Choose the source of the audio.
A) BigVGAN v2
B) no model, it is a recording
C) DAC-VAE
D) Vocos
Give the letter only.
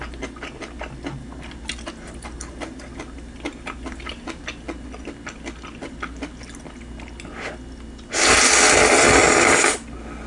B